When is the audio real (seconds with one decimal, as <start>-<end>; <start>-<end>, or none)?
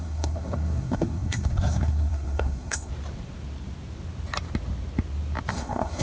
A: 2.9-5.5